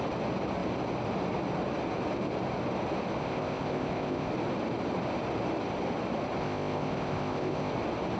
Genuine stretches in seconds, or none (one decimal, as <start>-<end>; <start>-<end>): 0.0-3.2; 4.3-6.4; 7.7-8.2

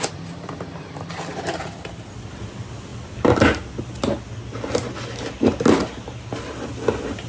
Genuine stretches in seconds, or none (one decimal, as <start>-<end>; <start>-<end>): 0.0-7.3